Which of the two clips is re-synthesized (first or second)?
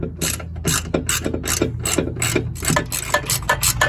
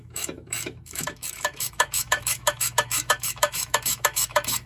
second